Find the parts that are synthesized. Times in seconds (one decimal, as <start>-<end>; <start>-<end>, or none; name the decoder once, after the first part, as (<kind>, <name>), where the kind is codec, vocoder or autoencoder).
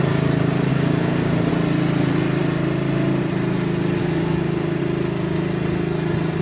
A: 0.7-1.5 (codec, DAC); 4.0-4.8